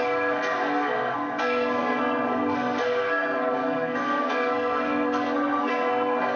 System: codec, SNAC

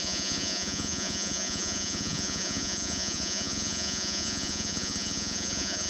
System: vocoder, Vocos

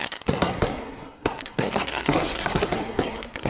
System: codec, SNAC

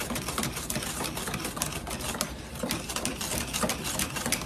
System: vocoder, BigVGAN v2